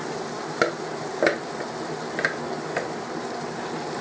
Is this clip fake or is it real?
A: real